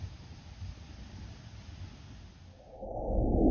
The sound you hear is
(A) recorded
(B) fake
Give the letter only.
A